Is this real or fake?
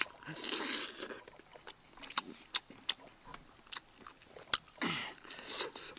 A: real